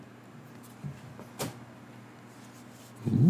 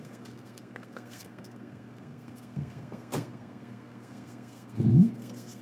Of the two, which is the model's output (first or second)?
second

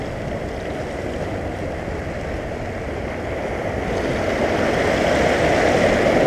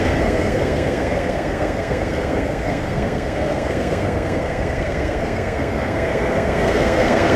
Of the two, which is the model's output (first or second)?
second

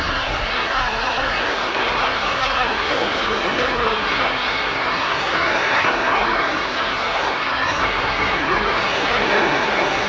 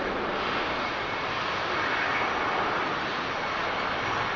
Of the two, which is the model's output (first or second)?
first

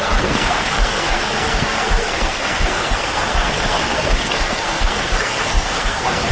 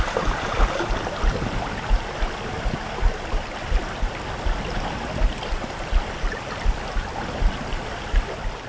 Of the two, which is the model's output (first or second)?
first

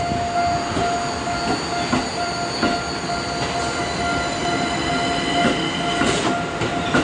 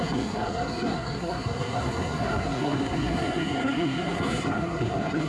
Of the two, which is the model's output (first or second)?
second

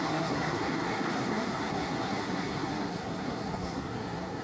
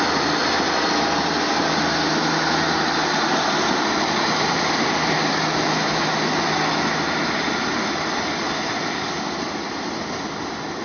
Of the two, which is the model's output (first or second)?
first